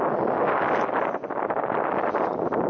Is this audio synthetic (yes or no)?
no